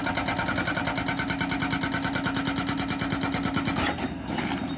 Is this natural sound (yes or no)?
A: yes